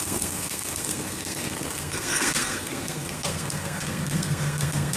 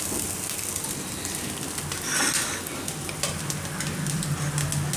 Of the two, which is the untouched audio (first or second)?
second